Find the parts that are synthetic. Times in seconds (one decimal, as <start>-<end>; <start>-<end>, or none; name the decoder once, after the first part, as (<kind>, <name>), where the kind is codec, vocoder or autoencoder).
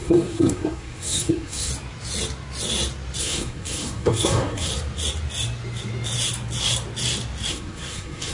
0.0-1.7 (codec, SNAC); 3.2-4.7; 7.5-8.3